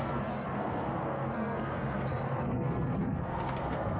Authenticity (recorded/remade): remade